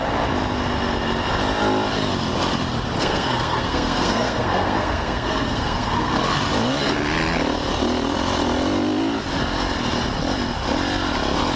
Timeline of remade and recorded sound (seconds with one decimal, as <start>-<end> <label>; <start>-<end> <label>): 0.0-3.0 recorded; 3.0-6.2 remade; 6.2-11.6 recorded